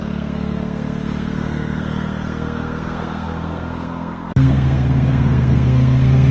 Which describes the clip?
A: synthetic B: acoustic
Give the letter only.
A